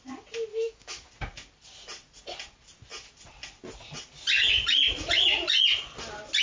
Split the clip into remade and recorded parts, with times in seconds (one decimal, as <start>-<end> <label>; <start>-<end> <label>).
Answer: 0.0-0.5 recorded; 0.5-1.1 remade; 1.1-6.4 recorded